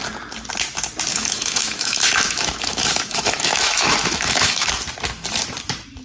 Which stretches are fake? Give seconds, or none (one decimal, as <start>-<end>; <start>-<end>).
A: 1.1-4.7